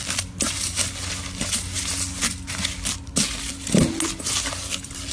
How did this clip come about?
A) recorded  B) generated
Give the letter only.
A